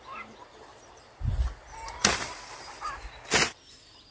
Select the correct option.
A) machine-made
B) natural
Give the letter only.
A